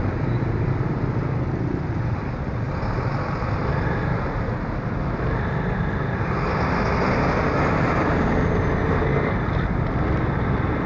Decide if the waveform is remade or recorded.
recorded